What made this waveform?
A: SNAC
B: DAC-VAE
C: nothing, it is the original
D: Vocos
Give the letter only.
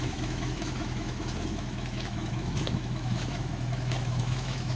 B